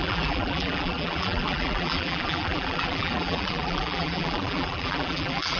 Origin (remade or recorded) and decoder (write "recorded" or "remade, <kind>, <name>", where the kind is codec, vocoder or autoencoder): remade, vocoder, BigVGAN v2